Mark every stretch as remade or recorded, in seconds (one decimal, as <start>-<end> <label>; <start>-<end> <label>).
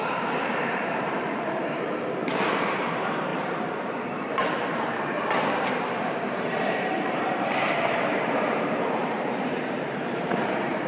0.0-10.9 remade